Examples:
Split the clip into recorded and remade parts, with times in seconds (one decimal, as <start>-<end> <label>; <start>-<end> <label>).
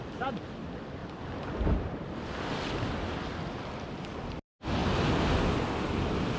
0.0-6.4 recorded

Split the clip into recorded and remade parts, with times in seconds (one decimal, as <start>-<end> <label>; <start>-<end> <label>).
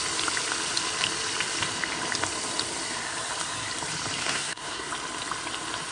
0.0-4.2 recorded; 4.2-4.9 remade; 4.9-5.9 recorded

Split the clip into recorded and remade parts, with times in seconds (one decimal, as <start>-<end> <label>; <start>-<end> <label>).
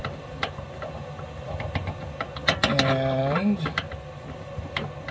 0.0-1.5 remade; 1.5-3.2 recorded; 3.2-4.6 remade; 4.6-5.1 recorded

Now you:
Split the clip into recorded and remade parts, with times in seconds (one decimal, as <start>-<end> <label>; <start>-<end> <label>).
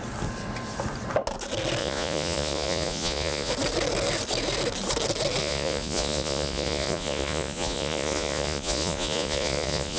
0.0-1.8 recorded; 1.8-3.5 remade; 3.5-5.4 recorded; 5.4-10.0 remade